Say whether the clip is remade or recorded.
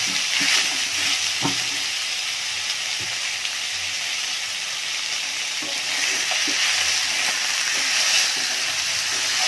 recorded